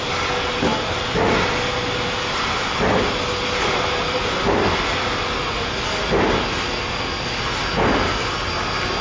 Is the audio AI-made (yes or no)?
no